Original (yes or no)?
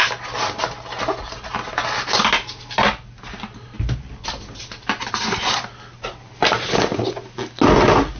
yes